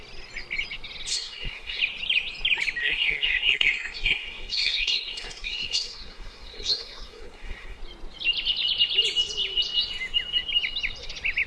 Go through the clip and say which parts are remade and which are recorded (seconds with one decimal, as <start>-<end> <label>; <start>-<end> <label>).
0.0-1.1 recorded; 1.1-1.8 remade; 1.8-2.8 recorded; 2.8-7.8 remade; 7.8-11.5 recorded